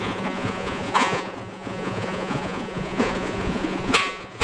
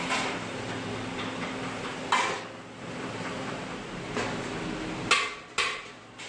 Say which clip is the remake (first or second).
first